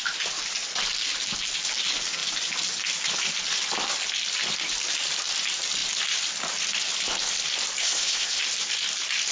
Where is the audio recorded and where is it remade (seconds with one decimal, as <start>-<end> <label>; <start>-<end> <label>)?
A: 0.0-7.8 recorded; 7.8-8.4 remade; 8.4-9.3 recorded